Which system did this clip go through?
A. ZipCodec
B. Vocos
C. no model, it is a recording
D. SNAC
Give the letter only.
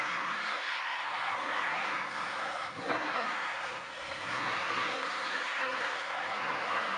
D